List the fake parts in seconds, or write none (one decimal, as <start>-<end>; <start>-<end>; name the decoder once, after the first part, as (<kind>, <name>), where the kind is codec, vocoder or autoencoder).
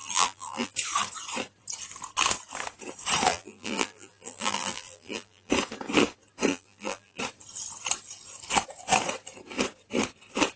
0.0-0.7 (vocoder, BigVGAN v2); 3.3-5.5; 6.5-7.2